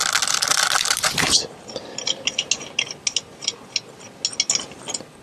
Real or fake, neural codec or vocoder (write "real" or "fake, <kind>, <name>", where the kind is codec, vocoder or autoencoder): real